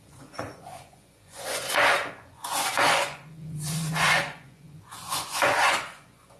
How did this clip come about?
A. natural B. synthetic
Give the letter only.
B